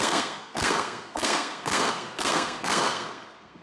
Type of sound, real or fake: fake